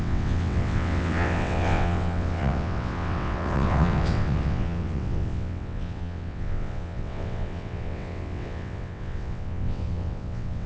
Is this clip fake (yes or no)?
yes